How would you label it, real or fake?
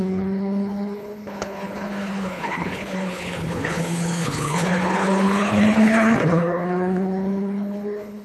fake